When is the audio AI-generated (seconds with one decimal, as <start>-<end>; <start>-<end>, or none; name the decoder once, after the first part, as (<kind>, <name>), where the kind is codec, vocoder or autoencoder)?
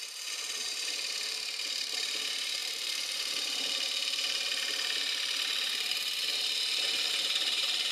0.0-7.9 (vocoder, BigVGAN v2)